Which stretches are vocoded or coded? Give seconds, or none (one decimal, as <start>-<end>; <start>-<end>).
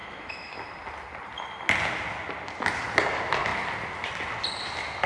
0.0-0.7